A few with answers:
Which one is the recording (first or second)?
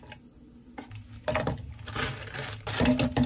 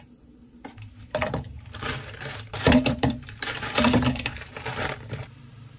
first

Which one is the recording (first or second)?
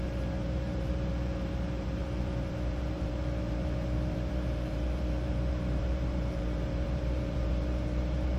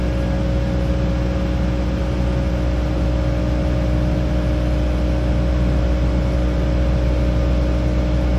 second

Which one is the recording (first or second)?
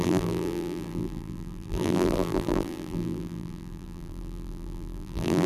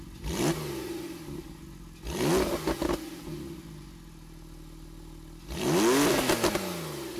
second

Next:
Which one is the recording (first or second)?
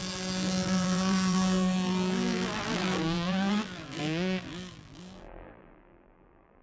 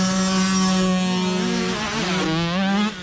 second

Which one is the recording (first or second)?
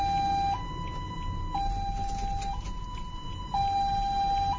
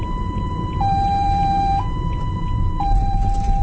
first